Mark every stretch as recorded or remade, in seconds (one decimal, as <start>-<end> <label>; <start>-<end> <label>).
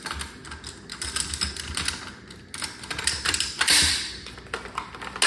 0.0-5.3 recorded